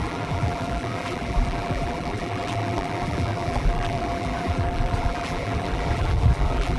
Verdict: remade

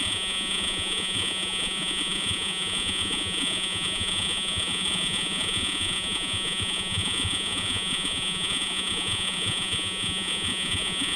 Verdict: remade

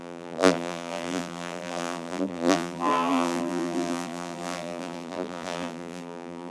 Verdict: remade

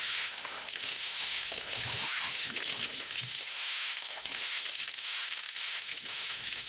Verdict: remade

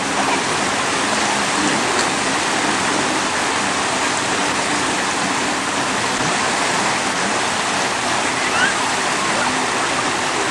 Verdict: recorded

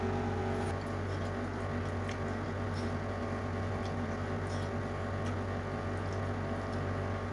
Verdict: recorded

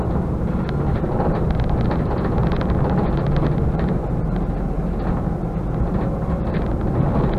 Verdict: recorded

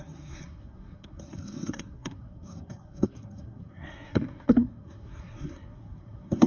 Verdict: remade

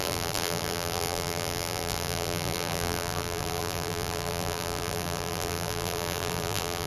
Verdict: remade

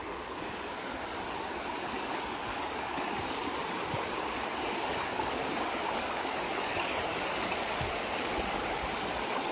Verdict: remade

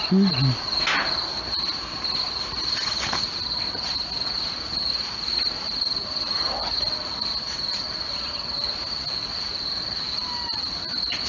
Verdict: recorded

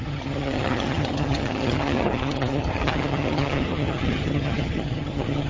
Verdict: remade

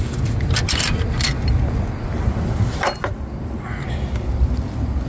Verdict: recorded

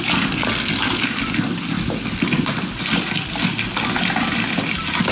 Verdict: recorded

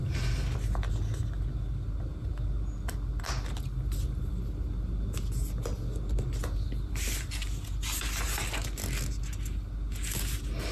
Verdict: recorded